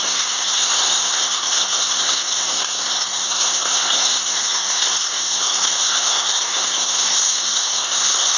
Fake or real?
fake